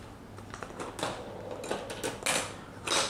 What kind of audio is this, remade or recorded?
recorded